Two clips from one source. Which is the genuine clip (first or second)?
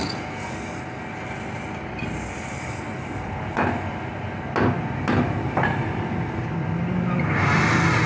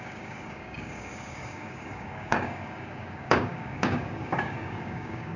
first